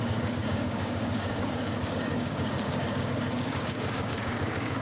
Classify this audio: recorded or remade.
remade